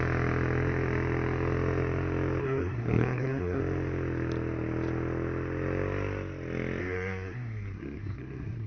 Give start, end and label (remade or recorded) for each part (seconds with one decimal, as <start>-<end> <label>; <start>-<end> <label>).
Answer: 0.0-2.4 recorded; 2.4-3.6 remade; 3.6-6.8 recorded; 6.8-8.7 remade